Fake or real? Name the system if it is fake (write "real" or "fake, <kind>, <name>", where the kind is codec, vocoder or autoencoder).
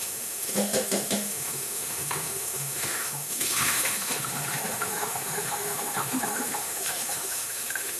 fake, autoencoder, DAC-VAE